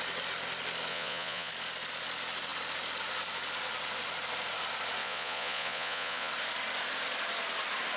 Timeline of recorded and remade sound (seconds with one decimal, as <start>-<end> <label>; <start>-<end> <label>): 0.0-0.9 recorded; 0.9-1.5 remade; 1.5-5.0 recorded; 5.0-6.3 remade; 6.3-8.0 recorded